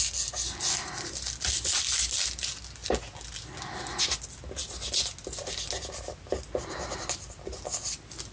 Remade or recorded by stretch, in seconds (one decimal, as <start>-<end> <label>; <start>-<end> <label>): 0.0-8.3 recorded